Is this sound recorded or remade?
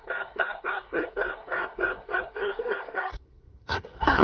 remade